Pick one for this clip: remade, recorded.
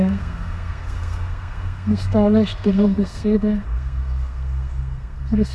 remade